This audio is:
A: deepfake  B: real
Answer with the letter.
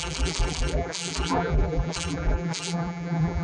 A